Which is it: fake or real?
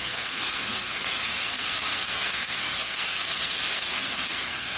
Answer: fake